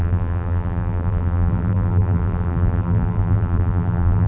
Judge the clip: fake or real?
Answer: fake